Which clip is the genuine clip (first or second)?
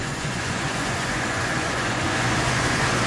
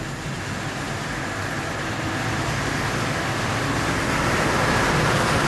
second